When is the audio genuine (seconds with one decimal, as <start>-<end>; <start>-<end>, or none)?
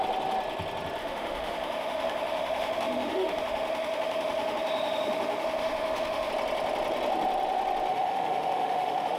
0.0-1.0; 6.3-7.9